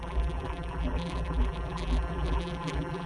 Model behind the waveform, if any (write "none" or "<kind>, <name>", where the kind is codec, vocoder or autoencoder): vocoder, BigVGAN v2